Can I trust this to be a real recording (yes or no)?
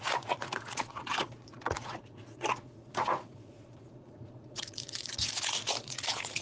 no